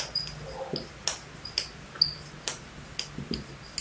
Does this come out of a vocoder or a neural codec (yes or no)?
no